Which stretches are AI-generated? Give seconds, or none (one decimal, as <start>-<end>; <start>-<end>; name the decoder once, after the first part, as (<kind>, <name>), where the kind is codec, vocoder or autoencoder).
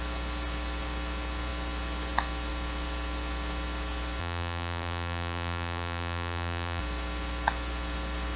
4.2-6.8 (vocoder, BigVGAN v2)